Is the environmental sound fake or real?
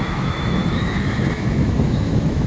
fake